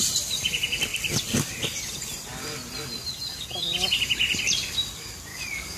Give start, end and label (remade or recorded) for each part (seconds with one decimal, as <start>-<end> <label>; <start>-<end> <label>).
0.0-5.3 recorded; 5.3-5.8 remade